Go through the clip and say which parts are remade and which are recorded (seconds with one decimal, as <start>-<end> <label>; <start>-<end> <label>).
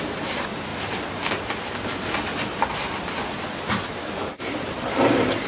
0.0-0.7 remade; 0.7-3.7 recorded; 3.7-5.5 remade